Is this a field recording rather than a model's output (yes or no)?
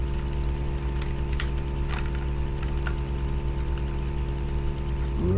yes